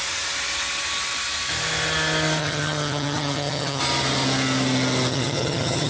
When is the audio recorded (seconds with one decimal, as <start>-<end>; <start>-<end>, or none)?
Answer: 0.0-2.4; 3.8-5.1